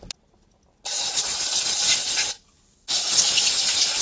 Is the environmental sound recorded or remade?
recorded